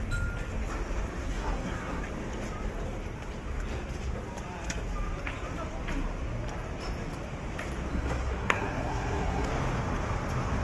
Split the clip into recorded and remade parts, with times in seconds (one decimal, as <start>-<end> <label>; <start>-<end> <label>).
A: 0.0-1.2 recorded; 1.2-2.0 remade; 2.0-7.9 recorded; 7.9-9.5 remade; 9.5-10.6 recorded